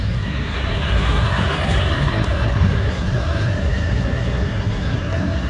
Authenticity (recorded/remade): remade